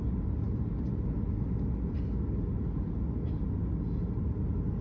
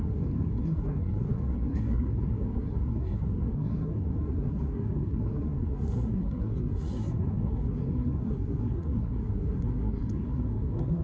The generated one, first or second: second